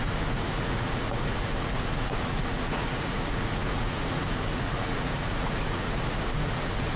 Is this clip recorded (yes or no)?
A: no